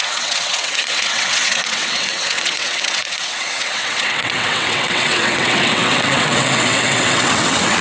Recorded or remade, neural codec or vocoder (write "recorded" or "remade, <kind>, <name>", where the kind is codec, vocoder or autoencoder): remade, vocoder, WaveNeXt